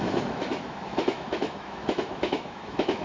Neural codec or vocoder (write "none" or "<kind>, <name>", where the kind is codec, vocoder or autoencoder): autoencoder, DAC-VAE